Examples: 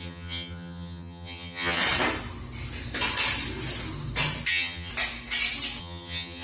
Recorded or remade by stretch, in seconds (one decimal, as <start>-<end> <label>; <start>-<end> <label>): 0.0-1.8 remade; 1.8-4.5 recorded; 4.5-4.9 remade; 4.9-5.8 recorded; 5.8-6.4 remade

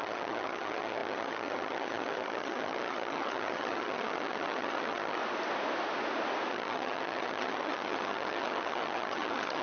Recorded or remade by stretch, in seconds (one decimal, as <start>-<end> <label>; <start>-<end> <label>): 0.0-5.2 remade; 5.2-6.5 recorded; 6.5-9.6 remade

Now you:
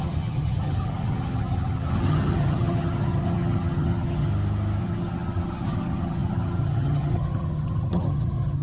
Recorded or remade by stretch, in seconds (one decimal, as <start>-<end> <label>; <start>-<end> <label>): 0.0-4.3 remade; 4.3-4.8 recorded; 4.8-8.6 remade

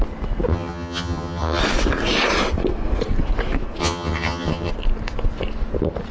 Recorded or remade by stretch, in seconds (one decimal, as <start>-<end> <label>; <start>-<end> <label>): 0.0-0.5 recorded; 0.5-1.6 remade; 1.6-3.8 recorded; 3.8-4.7 remade; 4.7-6.1 recorded